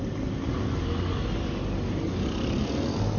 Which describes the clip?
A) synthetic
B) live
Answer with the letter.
B